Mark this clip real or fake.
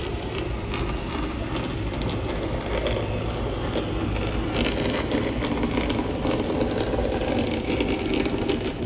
real